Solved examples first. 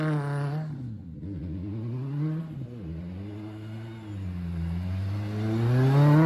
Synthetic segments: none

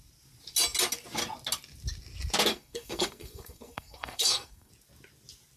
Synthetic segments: 2.5-4.7 (codec, SNAC)

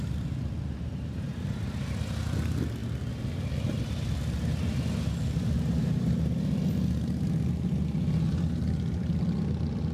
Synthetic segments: none